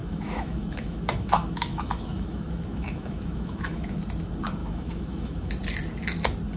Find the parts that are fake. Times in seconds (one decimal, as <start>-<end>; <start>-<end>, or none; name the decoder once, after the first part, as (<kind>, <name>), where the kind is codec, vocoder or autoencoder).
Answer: 0.0-4.0 (autoencoder, DAC-VAE); 4.6-5.5